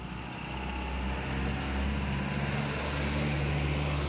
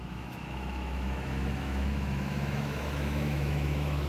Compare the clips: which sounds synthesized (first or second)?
second